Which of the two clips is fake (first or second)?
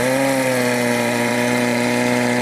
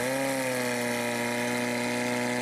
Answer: first